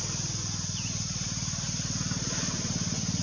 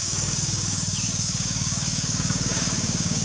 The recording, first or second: first